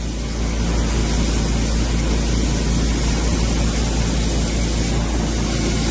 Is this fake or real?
real